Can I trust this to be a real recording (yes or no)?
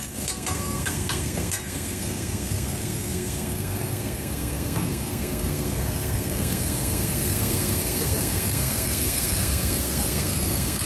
no